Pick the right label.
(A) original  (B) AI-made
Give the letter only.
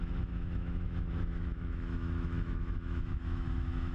B